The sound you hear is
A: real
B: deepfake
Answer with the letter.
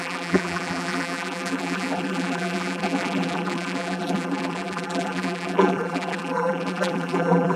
B